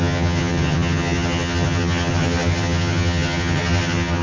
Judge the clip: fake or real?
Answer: fake